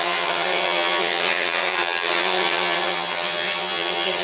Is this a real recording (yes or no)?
no